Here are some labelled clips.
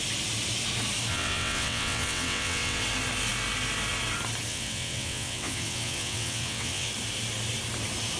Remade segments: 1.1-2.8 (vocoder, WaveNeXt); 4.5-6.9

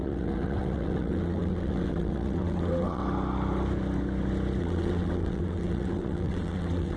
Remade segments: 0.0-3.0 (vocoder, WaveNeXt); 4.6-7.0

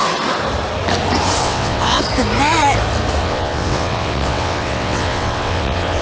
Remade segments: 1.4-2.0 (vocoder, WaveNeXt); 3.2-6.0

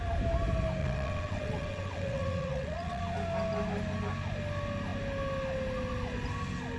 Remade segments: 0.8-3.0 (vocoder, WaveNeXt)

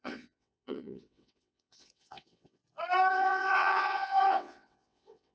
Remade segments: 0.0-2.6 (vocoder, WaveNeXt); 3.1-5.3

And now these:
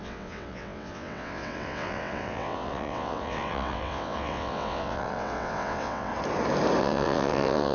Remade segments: 0.0-6.1 (vocoder, WaveNeXt); 6.8-7.7